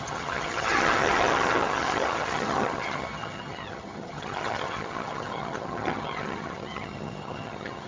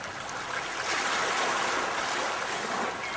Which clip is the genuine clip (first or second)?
second